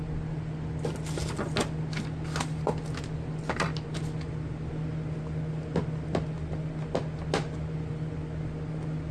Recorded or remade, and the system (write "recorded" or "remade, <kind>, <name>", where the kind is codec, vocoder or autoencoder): recorded